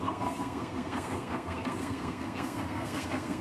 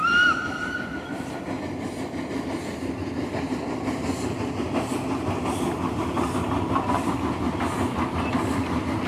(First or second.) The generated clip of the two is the first